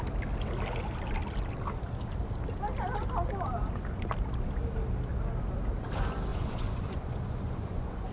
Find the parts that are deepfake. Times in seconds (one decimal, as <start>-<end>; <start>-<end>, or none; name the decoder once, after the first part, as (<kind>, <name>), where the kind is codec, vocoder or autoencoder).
6.3-8.1 (vocoder, Vocos)